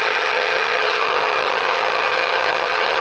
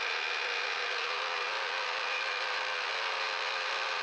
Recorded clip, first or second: second